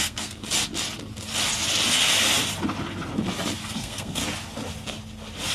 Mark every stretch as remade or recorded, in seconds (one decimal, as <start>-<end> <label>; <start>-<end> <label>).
0.0-0.4 remade; 0.4-3.7 recorded; 3.7-4.2 remade; 4.2-5.5 recorded